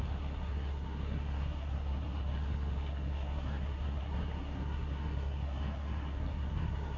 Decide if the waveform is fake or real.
fake